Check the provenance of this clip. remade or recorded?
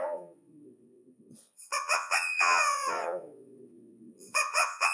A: remade